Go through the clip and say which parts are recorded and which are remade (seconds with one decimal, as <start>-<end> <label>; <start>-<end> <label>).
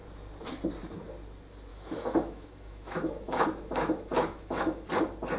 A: 0.0-1.7 recorded; 1.7-4.9 remade; 4.9-5.4 recorded